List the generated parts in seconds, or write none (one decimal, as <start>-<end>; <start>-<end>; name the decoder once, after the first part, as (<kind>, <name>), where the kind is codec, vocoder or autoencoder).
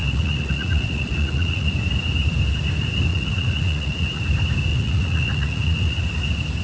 0.0-1.7 (vocoder, Vocos); 3.1-4.2; 4.7-6.0